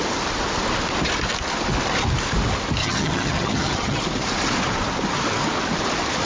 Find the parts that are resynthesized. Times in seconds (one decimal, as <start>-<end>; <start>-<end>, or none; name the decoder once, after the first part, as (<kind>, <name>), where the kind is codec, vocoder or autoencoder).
2.8-4.0 (vocoder, HiFi-GAN)